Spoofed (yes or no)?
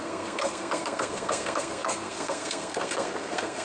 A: yes